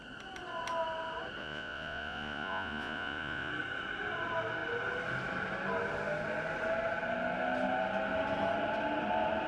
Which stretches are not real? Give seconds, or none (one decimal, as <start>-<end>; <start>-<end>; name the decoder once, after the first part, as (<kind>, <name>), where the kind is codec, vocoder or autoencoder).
1.4-3.5 (vocoder, Vocos)